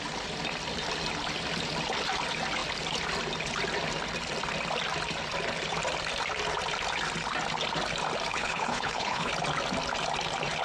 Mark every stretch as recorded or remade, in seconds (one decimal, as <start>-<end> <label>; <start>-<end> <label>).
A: 0.0-8.3 recorded; 8.3-9.3 remade; 9.3-10.6 recorded